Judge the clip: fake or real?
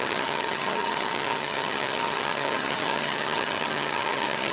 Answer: fake